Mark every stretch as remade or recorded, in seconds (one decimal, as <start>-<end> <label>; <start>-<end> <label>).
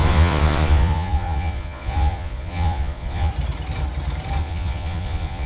0.0-3.3 remade; 3.3-4.4 recorded; 4.4-5.5 remade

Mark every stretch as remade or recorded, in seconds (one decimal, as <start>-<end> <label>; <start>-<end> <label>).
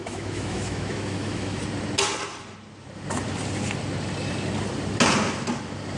0.0-1.6 remade; 1.6-6.0 recorded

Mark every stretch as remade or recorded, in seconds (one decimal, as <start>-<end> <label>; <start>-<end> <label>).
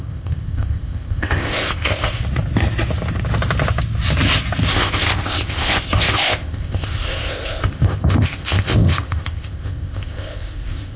0.0-2.2 remade; 2.2-4.7 recorded; 4.7-11.0 remade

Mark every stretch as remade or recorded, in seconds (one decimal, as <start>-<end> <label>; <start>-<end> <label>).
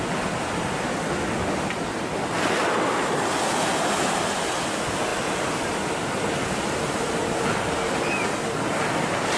0.0-9.4 recorded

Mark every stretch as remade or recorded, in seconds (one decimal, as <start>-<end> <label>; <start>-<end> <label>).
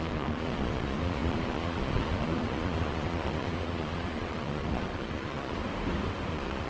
0.0-5.6 remade; 5.6-6.3 recorded; 6.3-6.7 remade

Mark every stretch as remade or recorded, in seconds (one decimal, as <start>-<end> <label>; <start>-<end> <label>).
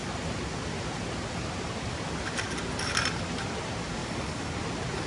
0.0-4.0 recorded; 4.0-4.5 remade; 4.5-5.1 recorded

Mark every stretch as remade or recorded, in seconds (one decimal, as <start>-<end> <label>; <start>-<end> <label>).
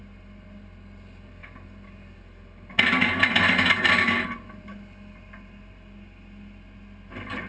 0.0-7.5 recorded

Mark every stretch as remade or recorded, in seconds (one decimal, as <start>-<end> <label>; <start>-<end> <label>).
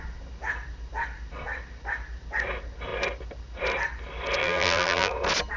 0.0-4.4 recorded; 4.4-5.1 remade; 5.1-5.6 recorded